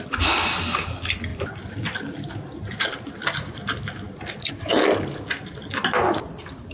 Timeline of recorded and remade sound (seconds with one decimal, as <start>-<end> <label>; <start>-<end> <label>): 0.0-1.3 recorded; 1.3-4.5 remade; 4.5-6.7 recorded